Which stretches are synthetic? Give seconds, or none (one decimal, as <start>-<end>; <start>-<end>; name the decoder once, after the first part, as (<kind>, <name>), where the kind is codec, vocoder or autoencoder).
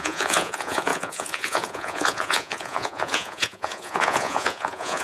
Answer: 0.0-5.0 (vocoder, Vocos)